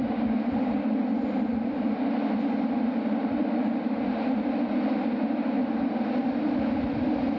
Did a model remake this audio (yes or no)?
no